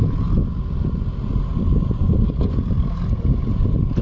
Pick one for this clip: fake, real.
real